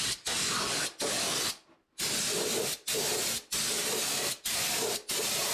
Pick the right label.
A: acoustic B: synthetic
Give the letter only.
A